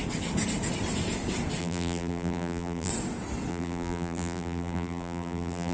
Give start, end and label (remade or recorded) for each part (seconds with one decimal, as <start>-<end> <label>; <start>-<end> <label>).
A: 0.0-1.6 recorded; 1.6-2.9 remade; 2.9-3.5 recorded; 3.5-5.7 remade